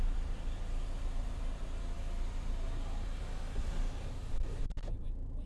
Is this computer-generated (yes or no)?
yes